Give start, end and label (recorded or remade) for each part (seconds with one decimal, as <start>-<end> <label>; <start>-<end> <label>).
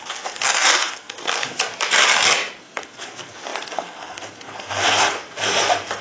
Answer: 0.0-1.6 remade; 1.6-2.6 recorded; 2.6-6.0 remade